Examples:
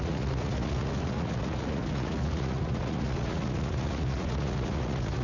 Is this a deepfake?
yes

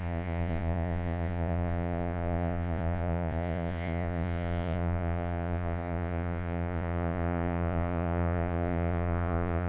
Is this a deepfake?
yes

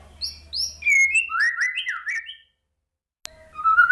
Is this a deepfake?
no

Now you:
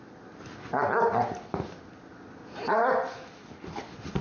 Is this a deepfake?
no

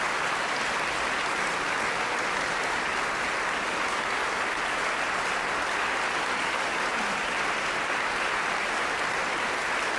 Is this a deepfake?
no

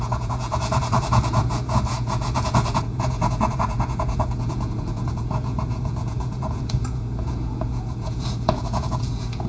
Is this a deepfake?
yes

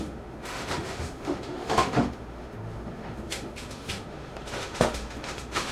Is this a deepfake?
yes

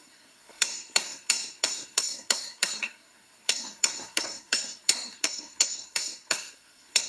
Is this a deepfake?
yes